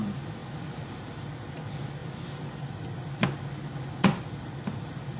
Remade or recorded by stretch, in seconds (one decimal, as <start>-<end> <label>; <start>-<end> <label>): 0.0-5.2 recorded